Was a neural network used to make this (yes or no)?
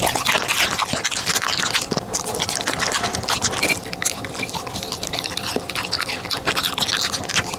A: no